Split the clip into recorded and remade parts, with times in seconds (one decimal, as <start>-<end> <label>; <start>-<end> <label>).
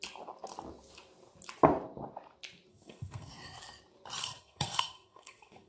0.0-2.7 recorded; 2.7-3.3 remade; 3.3-4.2 recorded; 4.2-5.7 remade